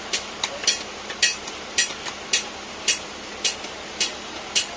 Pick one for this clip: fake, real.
real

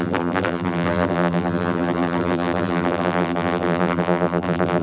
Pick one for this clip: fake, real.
fake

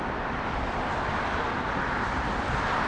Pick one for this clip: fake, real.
fake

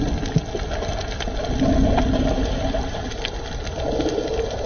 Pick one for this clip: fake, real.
real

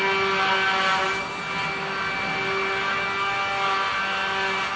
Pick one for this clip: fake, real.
real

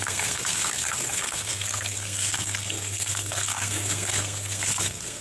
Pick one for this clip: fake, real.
fake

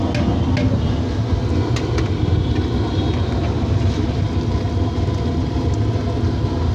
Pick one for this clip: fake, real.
real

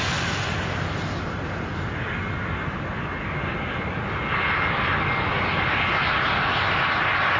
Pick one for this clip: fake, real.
real